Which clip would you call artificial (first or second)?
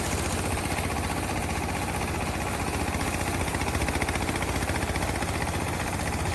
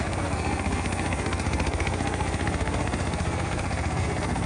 second